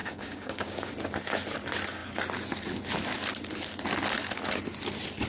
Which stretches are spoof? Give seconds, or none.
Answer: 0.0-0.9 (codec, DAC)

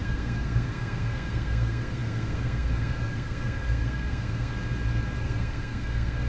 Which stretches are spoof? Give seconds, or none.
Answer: 0.0-4.5 (codec, SNAC); 5.2-6.3

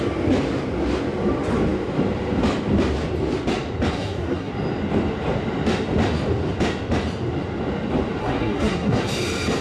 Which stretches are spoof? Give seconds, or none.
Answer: 3.9-4.5 (codec, SNAC); 8.2-9.1

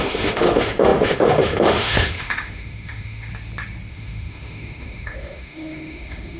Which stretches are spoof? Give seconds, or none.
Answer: 0.0-3.3 (autoencoder, DAC-VAE); 3.9-6.4

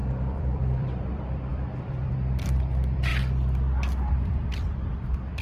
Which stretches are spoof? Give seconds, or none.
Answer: 0.0-3.1 (vocoder, BigVGAN v2); 4.1-5.4

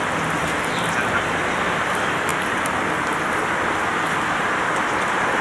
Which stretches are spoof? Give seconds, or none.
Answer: none